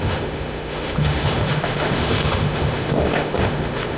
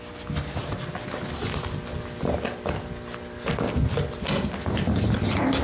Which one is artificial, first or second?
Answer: first